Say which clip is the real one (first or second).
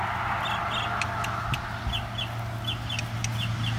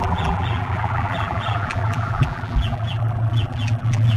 first